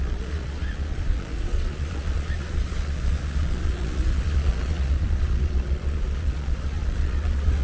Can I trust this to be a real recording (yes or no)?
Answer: no